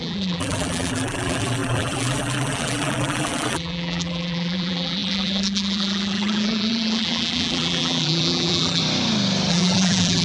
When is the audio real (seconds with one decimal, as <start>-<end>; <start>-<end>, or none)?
8.8-9.5